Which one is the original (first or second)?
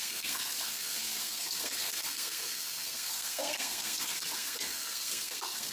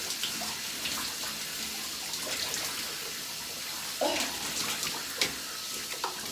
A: second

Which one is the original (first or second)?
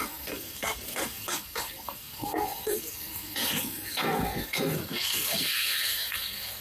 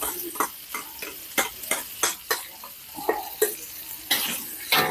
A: second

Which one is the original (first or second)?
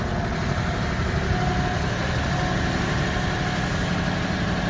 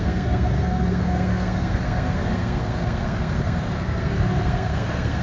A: first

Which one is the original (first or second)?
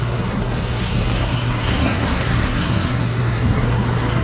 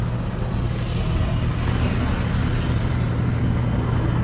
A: second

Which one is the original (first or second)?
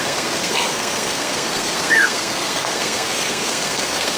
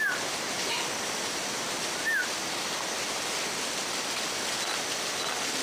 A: second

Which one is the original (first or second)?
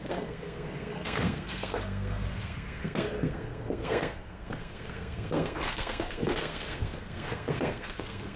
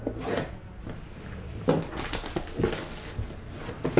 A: second